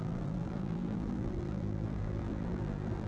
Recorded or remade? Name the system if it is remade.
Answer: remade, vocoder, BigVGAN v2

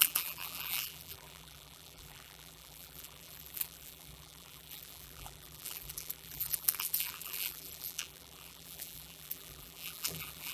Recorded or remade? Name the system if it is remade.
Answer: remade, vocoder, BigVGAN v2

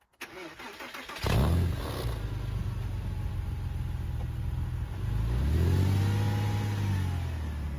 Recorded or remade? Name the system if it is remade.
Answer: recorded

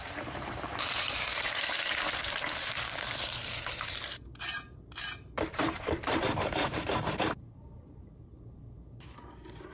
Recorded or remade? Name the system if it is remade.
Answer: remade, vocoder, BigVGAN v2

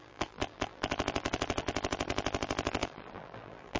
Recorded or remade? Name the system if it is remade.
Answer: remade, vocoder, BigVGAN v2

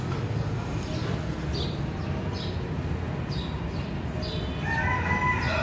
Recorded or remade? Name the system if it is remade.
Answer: recorded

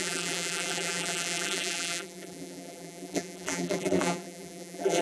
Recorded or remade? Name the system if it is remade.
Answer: remade, vocoder, BigVGAN v2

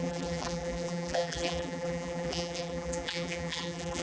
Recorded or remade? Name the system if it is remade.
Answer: remade, vocoder, BigVGAN v2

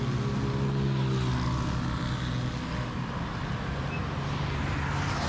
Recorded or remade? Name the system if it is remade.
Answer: recorded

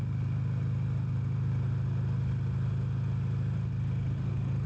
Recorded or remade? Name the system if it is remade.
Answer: recorded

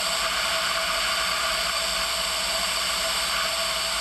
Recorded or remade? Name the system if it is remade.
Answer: recorded